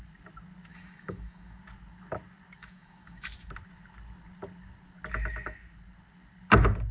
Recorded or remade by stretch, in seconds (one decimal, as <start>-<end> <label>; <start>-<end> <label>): 0.0-0.7 recorded; 0.7-1.6 remade; 1.6-2.6 recorded; 2.6-3.5 remade; 3.5-6.9 recorded